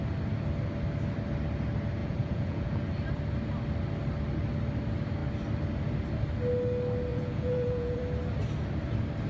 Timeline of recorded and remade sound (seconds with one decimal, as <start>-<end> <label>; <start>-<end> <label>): 0.0-2.0 recorded; 2.0-2.9 remade; 2.9-7.1 recorded; 7.1-8.0 remade; 8.0-9.3 recorded